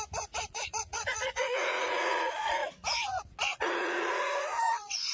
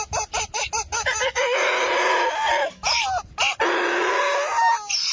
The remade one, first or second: first